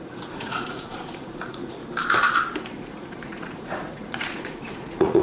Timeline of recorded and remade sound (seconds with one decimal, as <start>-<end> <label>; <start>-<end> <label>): 0.0-1.8 remade; 1.8-2.6 recorded; 2.6-5.2 remade